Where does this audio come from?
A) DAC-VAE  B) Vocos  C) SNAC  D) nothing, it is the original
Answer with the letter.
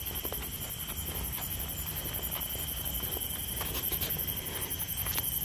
D